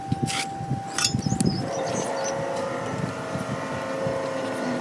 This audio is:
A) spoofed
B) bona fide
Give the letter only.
B